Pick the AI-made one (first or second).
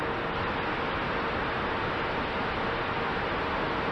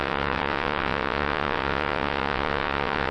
second